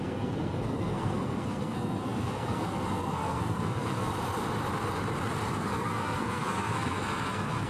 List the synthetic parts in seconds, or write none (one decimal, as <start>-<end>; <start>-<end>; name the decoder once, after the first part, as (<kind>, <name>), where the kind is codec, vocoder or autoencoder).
0.0-4.1 (codec, SNAC); 5.6-7.7